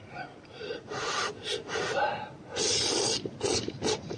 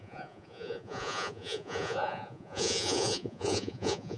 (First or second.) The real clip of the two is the first